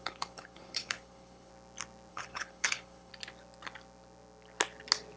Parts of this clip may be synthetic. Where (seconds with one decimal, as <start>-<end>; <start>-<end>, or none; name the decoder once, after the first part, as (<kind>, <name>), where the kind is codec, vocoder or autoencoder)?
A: 0.0-1.5 (codec, HILCodec); 2.1-3.1